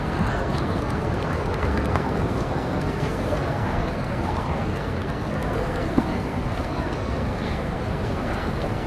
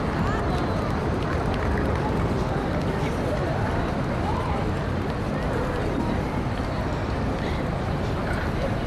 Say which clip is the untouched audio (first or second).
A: second